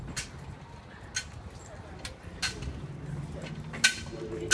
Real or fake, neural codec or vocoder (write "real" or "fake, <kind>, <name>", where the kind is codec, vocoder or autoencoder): real